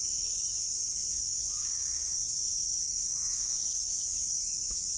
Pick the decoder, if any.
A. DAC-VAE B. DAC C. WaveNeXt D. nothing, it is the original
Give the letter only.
B